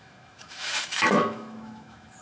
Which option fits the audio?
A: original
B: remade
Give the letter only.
B